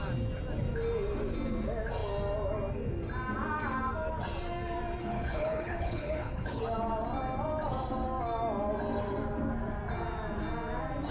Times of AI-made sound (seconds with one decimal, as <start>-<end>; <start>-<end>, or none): 5.0-6.6